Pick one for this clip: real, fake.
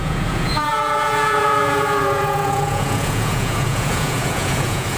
fake